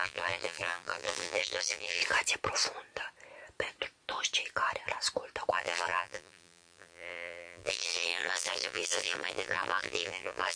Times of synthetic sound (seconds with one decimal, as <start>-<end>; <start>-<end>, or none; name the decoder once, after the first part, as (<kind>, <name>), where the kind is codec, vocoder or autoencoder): 0.0-2.0 (vocoder, BigVGAN v2); 5.5-10.6